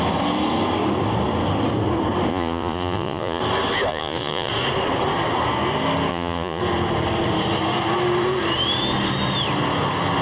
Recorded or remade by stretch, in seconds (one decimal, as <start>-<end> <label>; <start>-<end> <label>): 0.0-2.3 recorded; 2.3-3.4 remade; 3.4-3.9 recorded; 3.9-4.5 remade; 4.5-6.1 recorded; 6.1-6.6 remade; 6.6-10.2 recorded